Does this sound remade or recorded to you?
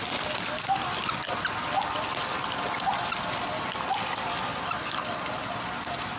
recorded